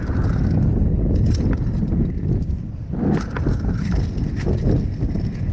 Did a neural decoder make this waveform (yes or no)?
no